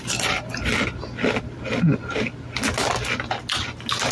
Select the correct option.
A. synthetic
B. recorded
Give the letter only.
B